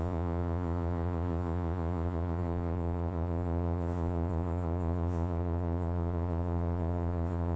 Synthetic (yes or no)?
yes